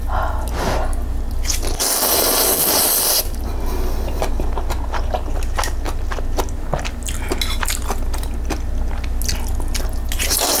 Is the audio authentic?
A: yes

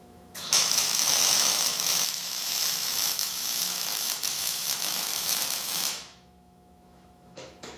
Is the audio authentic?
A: no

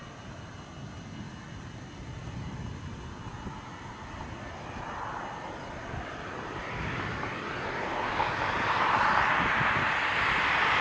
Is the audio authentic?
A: yes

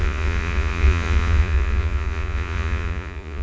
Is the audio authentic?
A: no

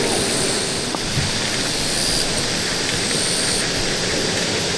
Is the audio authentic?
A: yes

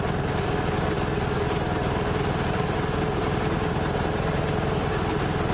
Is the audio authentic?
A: yes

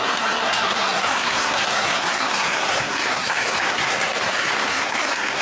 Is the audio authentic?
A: no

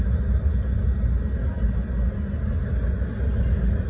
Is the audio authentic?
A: yes